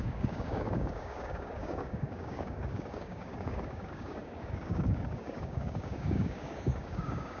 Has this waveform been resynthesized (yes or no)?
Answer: yes